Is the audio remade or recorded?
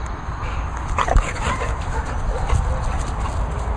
recorded